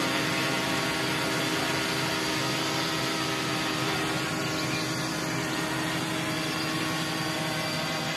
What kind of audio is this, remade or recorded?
recorded